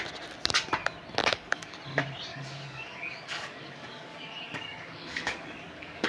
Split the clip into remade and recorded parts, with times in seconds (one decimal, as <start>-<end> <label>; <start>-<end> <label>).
0.0-1.2 recorded; 1.2-1.8 remade; 1.8-2.3 recorded; 2.3-6.1 remade